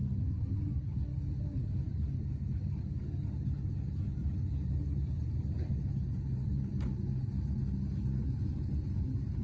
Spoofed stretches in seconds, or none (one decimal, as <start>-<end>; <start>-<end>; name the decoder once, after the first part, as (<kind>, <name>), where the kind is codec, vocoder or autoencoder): none